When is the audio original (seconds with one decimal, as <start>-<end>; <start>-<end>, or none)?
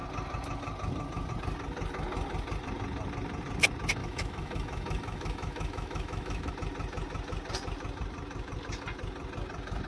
0.0-4.0; 6.5-9.9